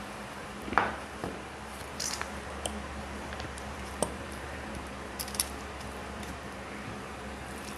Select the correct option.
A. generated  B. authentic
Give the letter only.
A